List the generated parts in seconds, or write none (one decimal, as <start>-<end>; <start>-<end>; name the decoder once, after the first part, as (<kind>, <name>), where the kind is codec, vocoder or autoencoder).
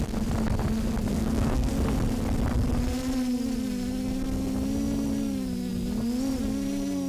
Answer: 1.1-1.7 (codec, SNAC)